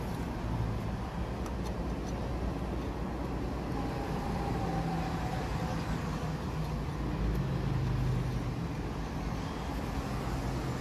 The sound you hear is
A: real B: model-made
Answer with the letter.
A